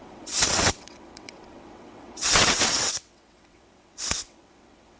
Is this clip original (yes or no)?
no